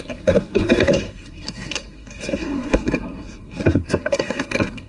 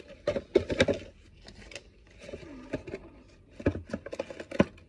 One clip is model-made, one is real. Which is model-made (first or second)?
first